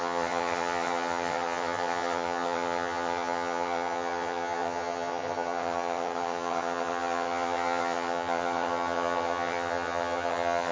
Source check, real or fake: fake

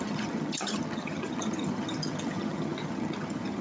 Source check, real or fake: fake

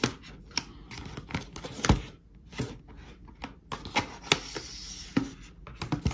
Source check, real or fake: real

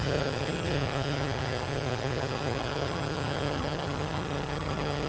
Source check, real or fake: fake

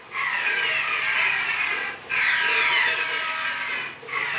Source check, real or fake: real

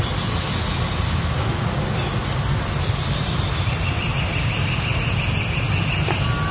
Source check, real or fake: real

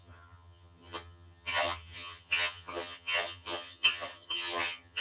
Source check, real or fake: fake